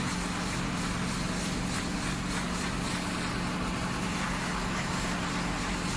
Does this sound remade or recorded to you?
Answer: recorded